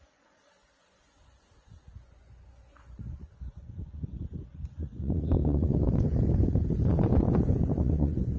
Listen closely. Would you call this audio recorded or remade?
remade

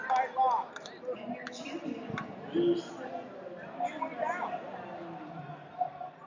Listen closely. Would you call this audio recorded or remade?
recorded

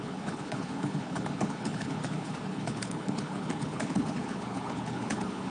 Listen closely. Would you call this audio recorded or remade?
remade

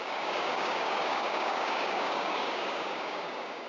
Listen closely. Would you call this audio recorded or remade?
remade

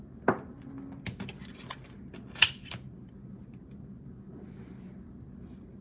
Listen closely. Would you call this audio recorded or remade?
recorded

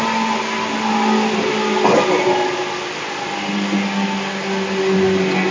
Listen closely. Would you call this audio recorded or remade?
recorded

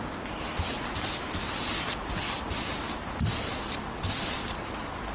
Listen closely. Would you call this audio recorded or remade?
recorded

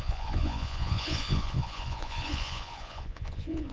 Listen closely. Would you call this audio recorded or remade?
remade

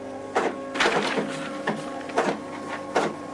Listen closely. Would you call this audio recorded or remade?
recorded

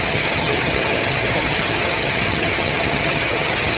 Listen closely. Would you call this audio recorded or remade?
remade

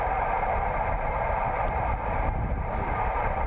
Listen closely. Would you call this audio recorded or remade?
remade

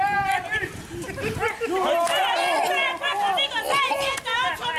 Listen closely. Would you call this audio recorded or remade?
recorded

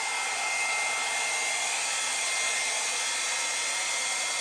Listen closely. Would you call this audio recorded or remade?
recorded